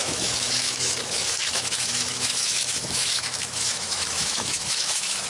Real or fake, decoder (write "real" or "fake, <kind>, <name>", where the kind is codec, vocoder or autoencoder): fake, autoencoder, DAC-VAE